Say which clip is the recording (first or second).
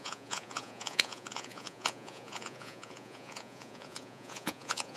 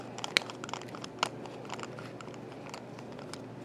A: second